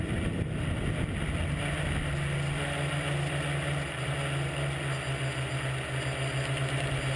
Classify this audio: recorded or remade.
recorded